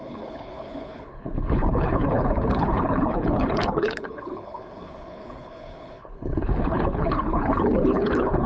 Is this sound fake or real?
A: fake